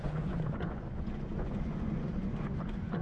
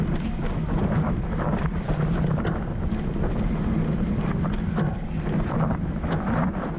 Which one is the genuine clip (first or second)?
second